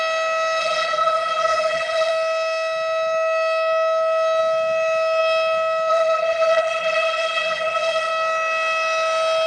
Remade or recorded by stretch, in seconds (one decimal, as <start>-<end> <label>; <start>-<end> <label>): 0.0-0.6 recorded; 0.6-2.1 remade; 2.1-5.9 recorded; 5.9-8.1 remade; 8.1-9.5 recorded